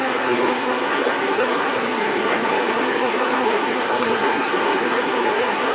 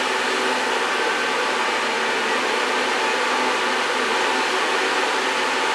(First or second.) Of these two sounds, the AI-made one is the first